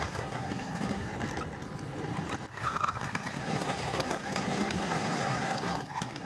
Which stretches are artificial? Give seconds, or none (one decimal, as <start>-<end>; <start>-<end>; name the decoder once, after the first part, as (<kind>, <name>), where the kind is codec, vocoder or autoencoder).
0.0-1.1 (codec, SNAC); 2.5-6.2